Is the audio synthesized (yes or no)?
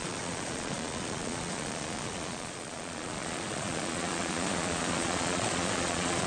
yes